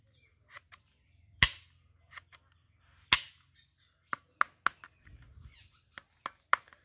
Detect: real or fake real